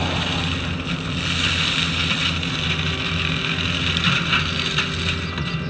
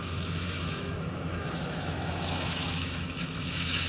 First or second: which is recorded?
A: first